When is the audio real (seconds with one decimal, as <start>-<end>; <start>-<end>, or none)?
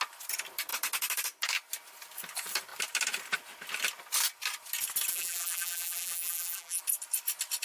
0.0-5.1; 6.8-7.6